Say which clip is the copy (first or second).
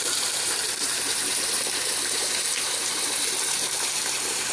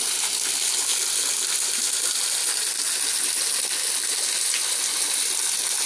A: first